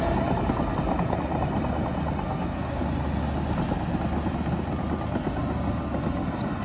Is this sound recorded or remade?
recorded